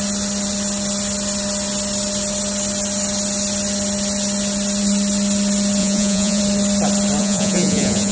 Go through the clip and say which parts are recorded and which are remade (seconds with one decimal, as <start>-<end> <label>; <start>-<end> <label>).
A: 0.0-5.8 recorded; 5.8-6.4 remade; 6.4-7.2 recorded; 7.2-8.1 remade